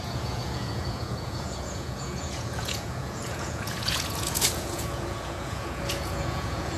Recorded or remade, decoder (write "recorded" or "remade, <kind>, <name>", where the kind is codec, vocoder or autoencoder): remade, vocoder, Vocos